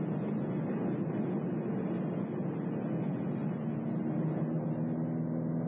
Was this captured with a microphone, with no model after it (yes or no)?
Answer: yes